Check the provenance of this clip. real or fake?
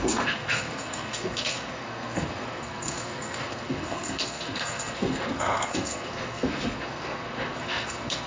fake